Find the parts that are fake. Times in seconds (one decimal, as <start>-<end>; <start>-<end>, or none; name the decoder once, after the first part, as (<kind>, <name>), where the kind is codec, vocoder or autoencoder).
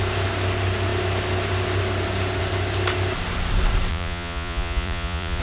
3.9-5.4 (vocoder, Vocos)